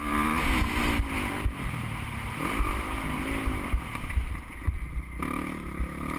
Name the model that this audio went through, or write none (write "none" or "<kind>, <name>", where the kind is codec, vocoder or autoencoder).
none